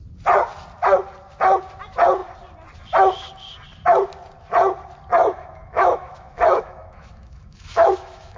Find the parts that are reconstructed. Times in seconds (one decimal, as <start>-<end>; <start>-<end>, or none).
5.2-8.4